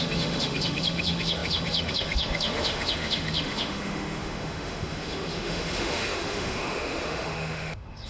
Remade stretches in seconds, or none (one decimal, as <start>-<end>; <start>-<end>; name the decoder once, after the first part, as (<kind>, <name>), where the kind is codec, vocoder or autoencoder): 0.0-8.1 (autoencoder, DAC-VAE)